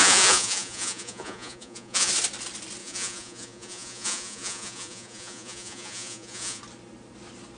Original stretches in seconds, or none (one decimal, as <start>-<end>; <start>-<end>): 2.1-2.8; 6.6-7.6